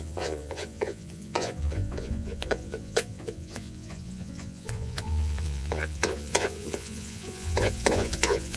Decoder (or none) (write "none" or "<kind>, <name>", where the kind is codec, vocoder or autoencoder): vocoder, Vocos